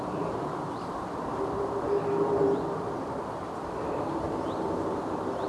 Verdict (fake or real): fake